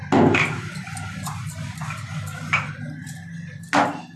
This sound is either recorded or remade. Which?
recorded